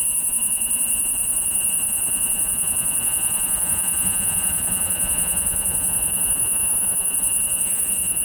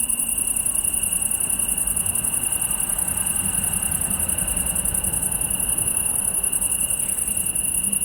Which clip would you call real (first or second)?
second